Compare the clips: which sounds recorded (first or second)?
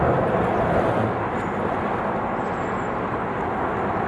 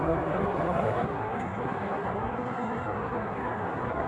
first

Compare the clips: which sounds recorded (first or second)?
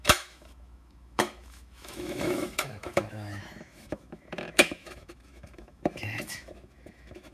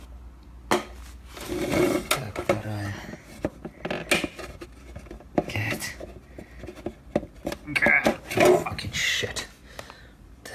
second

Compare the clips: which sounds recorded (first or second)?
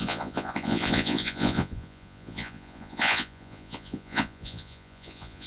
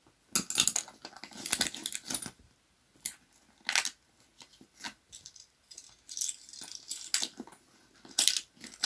second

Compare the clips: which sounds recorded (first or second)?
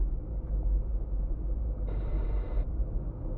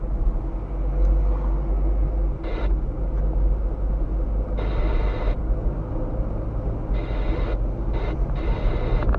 second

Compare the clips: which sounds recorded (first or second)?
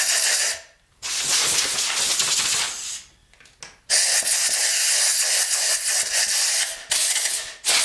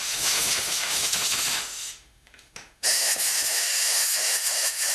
first